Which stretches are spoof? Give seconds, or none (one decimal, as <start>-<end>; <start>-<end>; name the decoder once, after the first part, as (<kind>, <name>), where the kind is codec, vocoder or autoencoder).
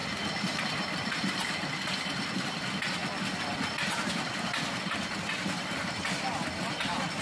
none